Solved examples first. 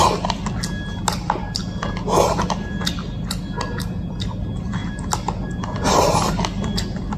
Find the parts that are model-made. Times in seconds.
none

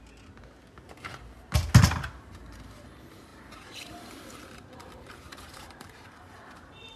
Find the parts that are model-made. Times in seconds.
3.3-7.0

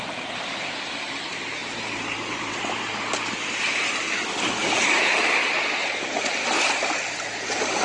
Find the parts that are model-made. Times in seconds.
none

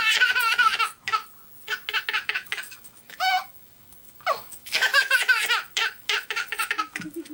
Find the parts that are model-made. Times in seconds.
0.0-1.2; 2.1-7.3

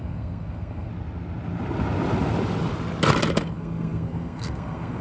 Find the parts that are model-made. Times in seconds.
0.0-0.9; 3.4-5.0